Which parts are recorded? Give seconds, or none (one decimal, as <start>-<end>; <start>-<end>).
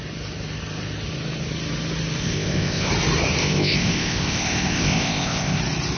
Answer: 0.0-2.2; 2.9-3.4; 5.6-6.0